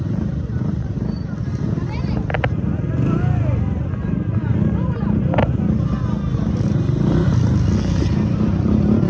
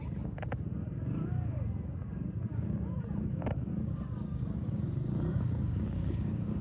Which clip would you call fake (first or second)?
second